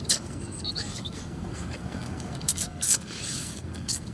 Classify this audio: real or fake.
fake